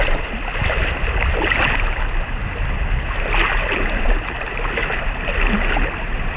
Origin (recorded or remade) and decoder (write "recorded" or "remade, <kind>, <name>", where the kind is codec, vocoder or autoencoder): recorded